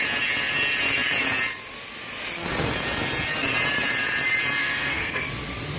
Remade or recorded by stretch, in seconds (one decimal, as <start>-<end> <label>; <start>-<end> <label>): 0.0-4.6 recorded; 4.6-5.2 remade; 5.2-5.8 recorded